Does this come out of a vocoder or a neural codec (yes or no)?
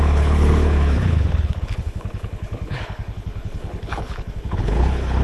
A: yes